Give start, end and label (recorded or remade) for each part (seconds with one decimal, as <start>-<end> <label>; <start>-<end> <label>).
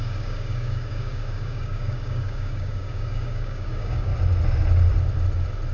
0.0-4.1 remade; 4.1-5.7 recorded